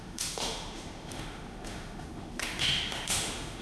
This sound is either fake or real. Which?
fake